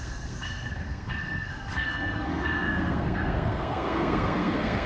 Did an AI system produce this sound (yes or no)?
yes